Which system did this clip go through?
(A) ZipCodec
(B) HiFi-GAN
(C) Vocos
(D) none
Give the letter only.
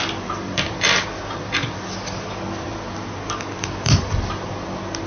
D